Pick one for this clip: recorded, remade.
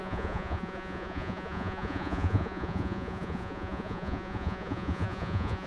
remade